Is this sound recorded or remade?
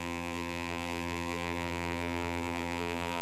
remade